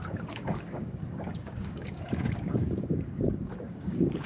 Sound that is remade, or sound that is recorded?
remade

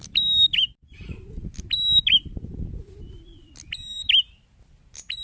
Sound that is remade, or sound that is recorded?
recorded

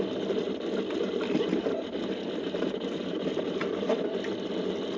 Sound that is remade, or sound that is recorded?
recorded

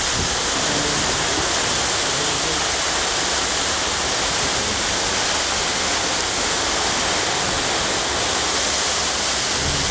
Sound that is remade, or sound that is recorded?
recorded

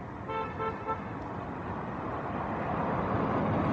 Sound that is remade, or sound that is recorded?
recorded